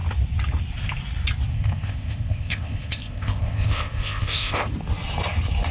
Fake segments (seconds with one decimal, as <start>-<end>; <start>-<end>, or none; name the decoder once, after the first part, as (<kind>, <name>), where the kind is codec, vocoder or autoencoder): 1.5-4.7 (codec, ZipCodec)